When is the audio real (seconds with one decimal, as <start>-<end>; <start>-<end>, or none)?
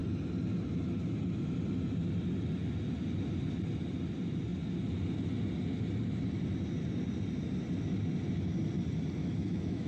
0.0-9.2